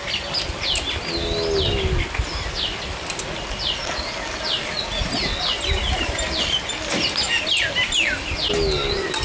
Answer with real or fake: real